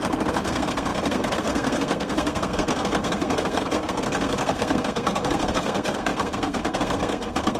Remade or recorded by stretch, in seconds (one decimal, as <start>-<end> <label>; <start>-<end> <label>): 0.0-7.6 remade